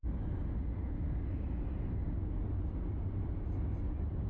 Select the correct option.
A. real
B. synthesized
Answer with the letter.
A